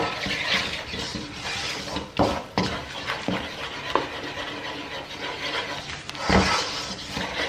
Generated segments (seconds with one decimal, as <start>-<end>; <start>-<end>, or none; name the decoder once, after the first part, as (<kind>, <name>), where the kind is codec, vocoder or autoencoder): none